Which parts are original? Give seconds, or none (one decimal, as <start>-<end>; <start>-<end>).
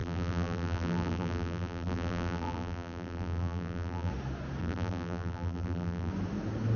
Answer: 4.1-4.6; 6.1-6.8